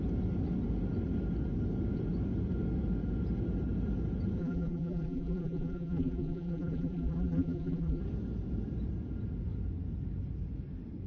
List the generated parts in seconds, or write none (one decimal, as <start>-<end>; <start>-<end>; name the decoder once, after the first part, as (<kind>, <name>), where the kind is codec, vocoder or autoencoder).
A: 4.4-8.0 (vocoder, BigVGAN v2)